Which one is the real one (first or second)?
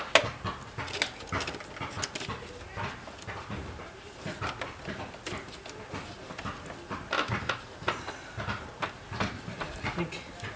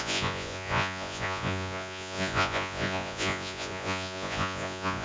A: first